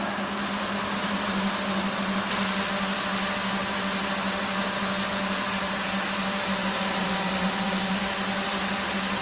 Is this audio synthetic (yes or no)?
no